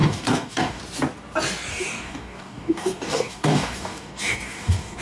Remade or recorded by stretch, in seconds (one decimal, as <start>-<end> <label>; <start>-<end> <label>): 0.0-0.8 remade; 0.8-1.7 recorded; 1.7-5.0 remade